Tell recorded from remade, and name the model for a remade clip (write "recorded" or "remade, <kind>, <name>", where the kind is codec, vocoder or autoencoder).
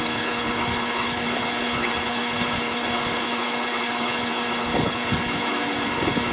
remade, codec, HILCodec